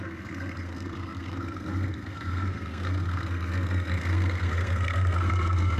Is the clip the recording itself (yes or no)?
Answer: no